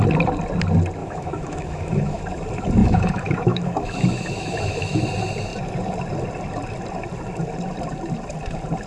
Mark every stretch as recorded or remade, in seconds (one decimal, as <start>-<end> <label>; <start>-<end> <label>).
0.0-1.0 recorded; 1.0-2.2 remade; 2.2-2.8 recorded; 2.8-5.0 remade; 5.0-8.9 recorded